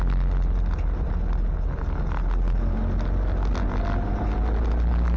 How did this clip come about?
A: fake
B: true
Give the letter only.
B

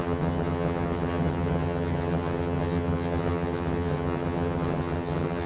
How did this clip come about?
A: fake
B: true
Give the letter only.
A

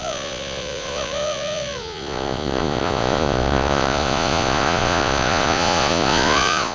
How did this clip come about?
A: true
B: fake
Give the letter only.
B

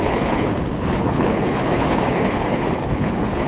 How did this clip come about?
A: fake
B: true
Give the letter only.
A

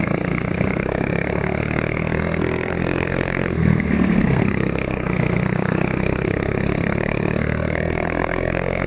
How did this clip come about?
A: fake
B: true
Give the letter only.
A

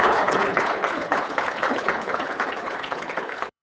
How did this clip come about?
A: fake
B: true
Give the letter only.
A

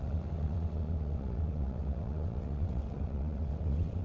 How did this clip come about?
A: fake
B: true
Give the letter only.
A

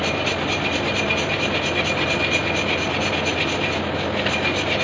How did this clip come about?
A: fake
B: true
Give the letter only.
B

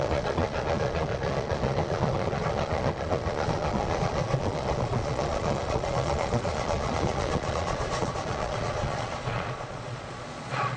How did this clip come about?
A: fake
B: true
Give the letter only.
A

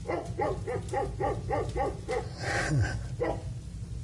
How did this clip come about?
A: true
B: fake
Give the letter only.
A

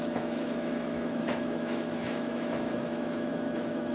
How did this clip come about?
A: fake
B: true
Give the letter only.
A